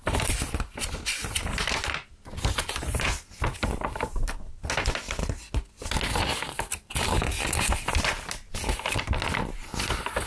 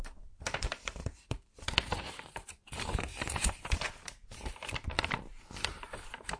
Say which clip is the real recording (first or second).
first